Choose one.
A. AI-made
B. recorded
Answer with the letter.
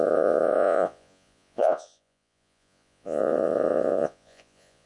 A